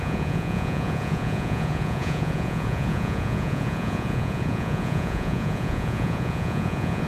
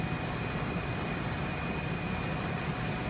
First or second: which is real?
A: second